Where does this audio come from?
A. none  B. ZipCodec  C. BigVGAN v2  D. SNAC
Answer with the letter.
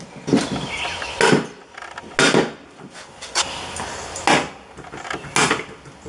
A